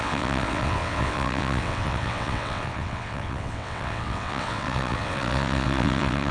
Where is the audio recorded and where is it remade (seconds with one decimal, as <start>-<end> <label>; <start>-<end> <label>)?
0.0-6.3 remade